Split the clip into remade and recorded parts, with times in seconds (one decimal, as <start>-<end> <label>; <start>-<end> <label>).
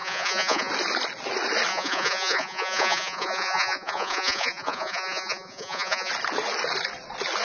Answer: 0.0-0.7 remade; 0.7-1.7 recorded; 1.7-6.1 remade; 6.1-7.4 recorded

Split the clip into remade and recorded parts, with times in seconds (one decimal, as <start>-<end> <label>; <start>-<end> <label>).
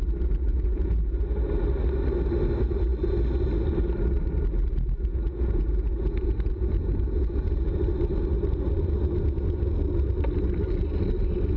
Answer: 0.0-0.5 recorded; 0.5-1.2 remade; 1.2-5.1 recorded; 5.1-7.8 remade; 7.8-11.6 recorded